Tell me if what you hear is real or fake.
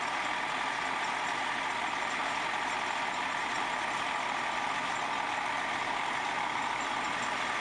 real